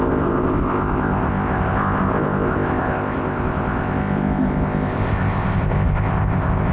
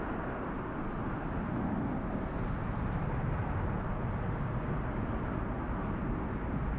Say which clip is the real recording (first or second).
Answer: second